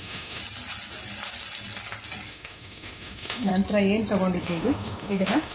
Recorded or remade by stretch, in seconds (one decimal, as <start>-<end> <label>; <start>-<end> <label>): 0.0-0.4 remade; 0.4-2.3 recorded; 2.3-3.5 remade; 3.5-4.4 recorded; 4.4-5.5 remade